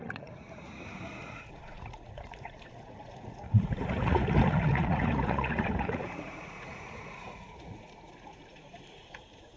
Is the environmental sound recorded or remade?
remade